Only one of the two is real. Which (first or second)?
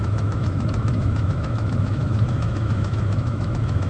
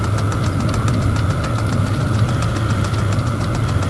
second